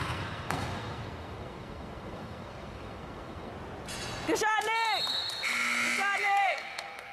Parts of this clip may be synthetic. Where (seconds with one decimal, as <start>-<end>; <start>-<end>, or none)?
0.0-3.5; 6.2-7.1